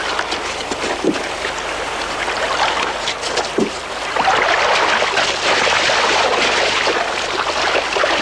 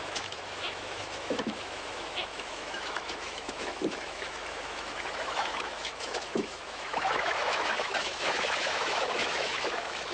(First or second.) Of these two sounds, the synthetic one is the second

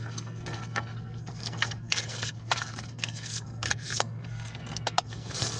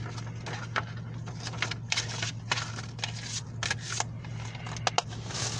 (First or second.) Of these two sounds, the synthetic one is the first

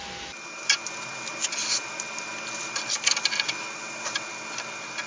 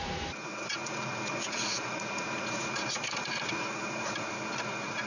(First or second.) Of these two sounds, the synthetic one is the second